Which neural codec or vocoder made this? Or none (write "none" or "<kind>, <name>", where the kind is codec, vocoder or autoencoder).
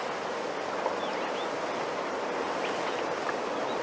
none